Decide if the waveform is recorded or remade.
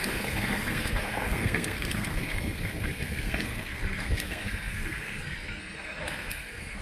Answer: remade